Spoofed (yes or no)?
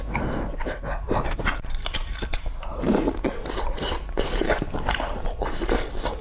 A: yes